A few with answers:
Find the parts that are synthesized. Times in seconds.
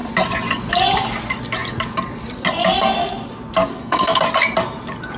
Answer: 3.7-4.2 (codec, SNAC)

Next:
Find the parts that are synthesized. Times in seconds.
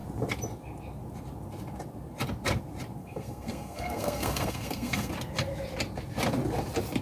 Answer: 3.0-5.1 (codec, SNAC)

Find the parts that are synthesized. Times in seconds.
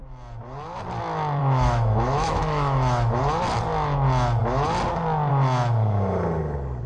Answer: 1.4-3.2 (autoencoder, DAC-VAE)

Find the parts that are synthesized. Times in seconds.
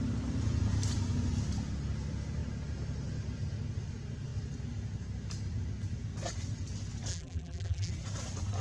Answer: 7.1-7.9 (vocoder, BigVGAN v2)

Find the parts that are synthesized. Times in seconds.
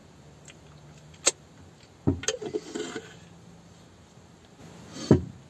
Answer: none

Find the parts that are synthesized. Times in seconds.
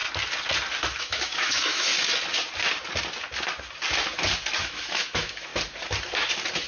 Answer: 1.0-1.9 (autoencoder, DAC-VAE); 4.6-5.5